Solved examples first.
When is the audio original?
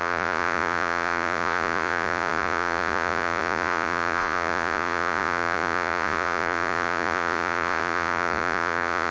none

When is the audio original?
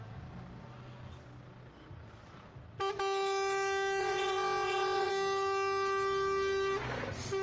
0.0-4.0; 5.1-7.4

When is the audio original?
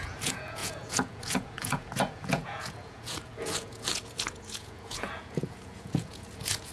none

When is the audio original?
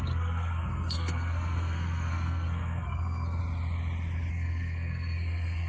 3.4-4.3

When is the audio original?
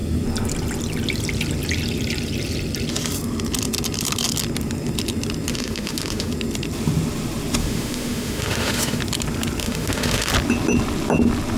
0.0-5.5; 6.3-7.6; 9.0-9.6; 10.3-11.6